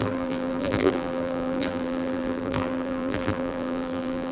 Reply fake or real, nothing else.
fake